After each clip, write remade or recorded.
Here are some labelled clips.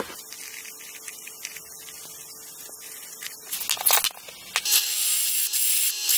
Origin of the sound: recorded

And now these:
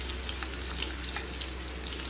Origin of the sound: recorded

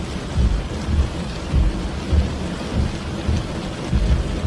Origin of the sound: recorded